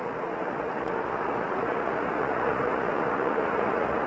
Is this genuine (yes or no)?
no